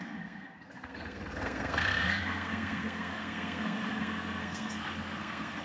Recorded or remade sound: remade